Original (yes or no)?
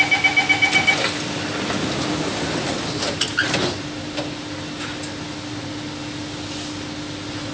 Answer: yes